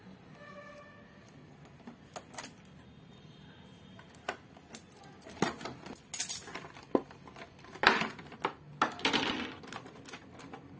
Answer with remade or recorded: recorded